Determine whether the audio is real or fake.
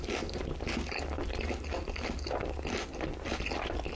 real